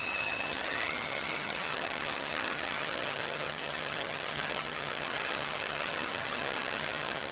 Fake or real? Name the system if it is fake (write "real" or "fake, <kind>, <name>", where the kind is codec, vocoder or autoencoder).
fake, vocoder, HiFi-GAN